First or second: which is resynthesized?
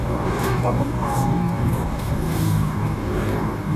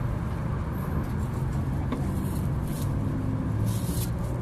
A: first